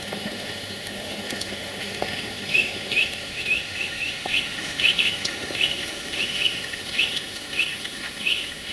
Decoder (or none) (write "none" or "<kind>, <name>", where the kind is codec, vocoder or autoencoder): autoencoder, DAC-VAE